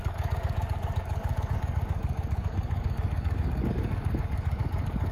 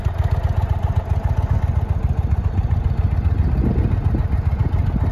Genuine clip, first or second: second